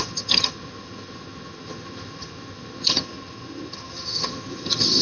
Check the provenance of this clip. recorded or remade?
remade